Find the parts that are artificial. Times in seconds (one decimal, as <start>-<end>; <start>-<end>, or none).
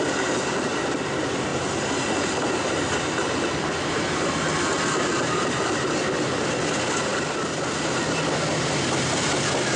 none